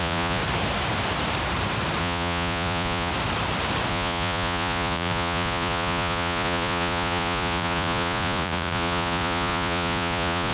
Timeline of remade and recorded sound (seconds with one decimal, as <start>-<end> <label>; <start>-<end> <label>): 0.0-0.4 remade; 0.4-2.0 recorded; 2.0-3.1 remade; 3.1-3.9 recorded; 3.9-10.5 remade